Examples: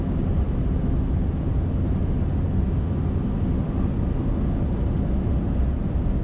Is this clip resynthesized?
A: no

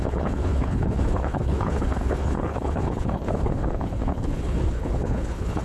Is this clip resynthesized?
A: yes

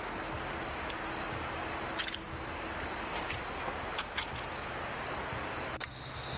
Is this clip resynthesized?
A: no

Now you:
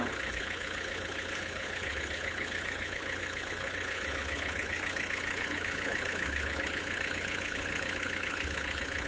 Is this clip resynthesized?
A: yes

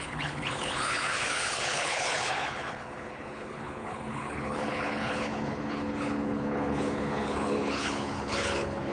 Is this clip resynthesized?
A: yes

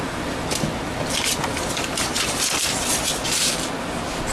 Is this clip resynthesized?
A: no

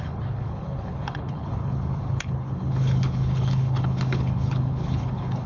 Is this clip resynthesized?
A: yes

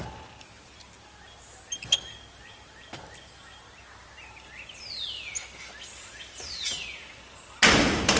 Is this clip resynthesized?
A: no